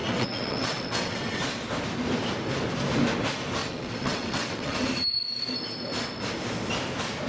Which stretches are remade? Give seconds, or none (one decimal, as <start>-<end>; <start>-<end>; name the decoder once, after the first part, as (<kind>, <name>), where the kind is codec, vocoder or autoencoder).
0.0-1.4 (vocoder, WaveNeXt); 3.6-4.9